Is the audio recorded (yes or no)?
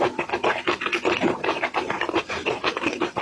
yes